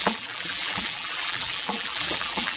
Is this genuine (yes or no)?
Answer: no